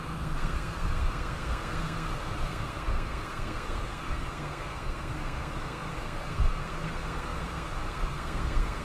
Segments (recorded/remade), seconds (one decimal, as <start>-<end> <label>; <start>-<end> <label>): 0.0-8.8 remade